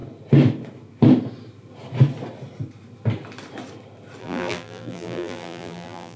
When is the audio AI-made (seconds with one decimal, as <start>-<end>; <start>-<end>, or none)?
4.2-6.2